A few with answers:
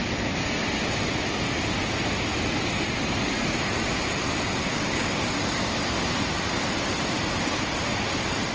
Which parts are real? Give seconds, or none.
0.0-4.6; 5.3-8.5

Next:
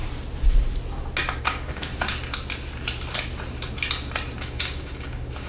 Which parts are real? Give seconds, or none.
0.0-1.4; 1.9-4.4

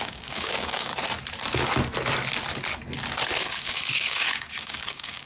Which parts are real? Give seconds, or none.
0.9-3.4

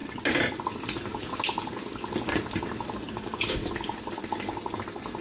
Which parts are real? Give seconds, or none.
0.0-3.1; 3.6-5.2

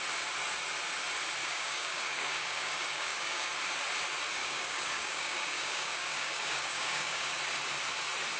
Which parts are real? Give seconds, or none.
0.0-1.4; 3.5-4.4; 7.4-8.4

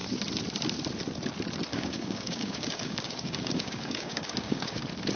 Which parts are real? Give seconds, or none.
0.0-1.7; 4.8-5.2

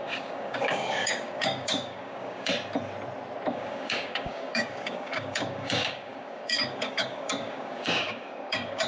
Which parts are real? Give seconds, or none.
2.5-3.5